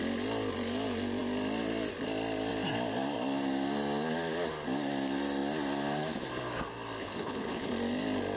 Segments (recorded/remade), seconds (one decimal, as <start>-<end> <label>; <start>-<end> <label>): 0.0-7.0 recorded; 7.0-7.7 remade; 7.7-8.4 recorded